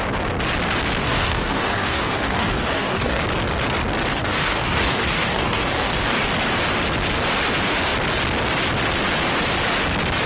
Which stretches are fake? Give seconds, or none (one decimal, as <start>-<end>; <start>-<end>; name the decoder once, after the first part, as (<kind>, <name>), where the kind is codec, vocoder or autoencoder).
1.0-3.2 (codec, DAC); 4.1-6.3